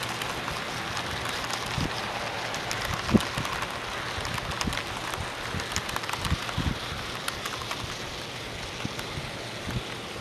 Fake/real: real